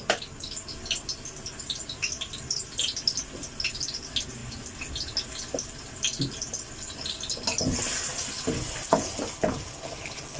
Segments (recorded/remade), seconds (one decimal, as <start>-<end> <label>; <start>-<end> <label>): 0.0-10.4 recorded